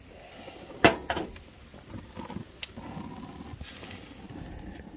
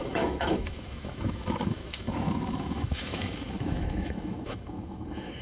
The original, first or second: first